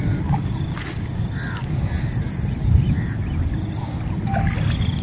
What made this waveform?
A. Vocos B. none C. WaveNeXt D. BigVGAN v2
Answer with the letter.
B